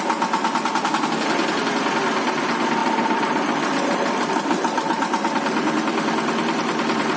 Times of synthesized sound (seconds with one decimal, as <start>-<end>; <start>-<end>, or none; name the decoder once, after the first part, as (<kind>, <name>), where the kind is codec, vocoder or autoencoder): 2.8-7.2 (vocoder, BigVGAN v2)